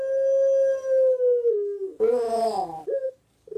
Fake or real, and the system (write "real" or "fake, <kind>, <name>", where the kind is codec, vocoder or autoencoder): real